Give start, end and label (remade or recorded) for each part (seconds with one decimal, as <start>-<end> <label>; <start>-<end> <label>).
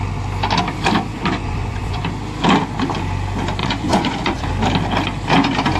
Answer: 0.0-1.1 recorded; 1.1-2.0 remade; 2.0-3.6 recorded; 3.6-4.5 remade; 4.5-5.8 recorded